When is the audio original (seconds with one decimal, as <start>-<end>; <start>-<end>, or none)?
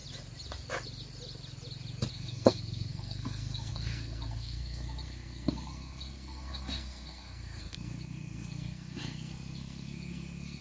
0.0-2.1